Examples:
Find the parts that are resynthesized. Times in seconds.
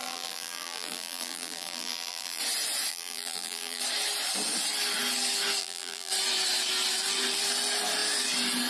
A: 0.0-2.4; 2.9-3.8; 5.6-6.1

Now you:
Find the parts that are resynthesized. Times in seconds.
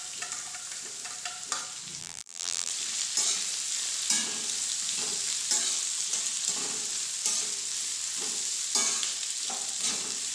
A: 2.0-2.7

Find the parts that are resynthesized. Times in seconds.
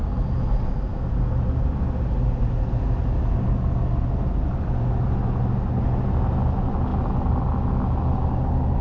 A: none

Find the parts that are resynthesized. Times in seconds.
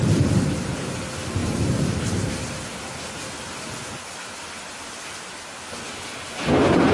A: 1.4-2.3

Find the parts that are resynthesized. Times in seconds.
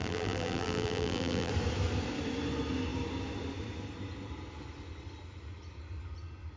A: 0.0-1.5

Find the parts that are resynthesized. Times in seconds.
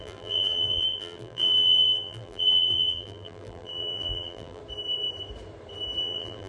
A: 0.0-4.6; 6.0-6.5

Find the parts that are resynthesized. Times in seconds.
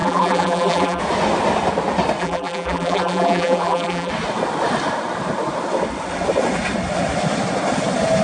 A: 0.0-1.0; 2.2-4.1